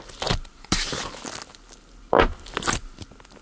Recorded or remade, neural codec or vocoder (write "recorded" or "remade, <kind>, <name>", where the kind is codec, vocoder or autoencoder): recorded